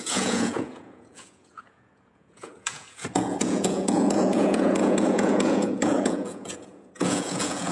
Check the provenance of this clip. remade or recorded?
remade